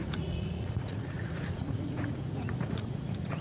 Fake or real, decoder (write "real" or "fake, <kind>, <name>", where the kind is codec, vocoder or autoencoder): fake, vocoder, Vocos